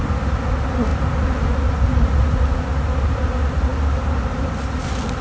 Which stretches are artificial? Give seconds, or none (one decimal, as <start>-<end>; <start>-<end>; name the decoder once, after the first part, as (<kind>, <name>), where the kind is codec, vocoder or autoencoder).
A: none